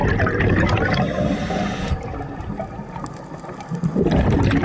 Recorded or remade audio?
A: recorded